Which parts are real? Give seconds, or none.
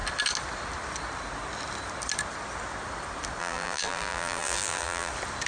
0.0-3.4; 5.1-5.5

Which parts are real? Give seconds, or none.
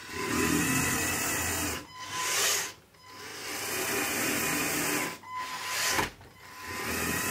0.6-7.3